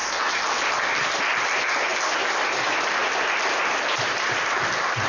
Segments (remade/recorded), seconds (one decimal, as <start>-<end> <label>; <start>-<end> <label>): 0.0-0.9 recorded; 0.9-3.0 remade; 3.0-3.6 recorded; 3.6-5.1 remade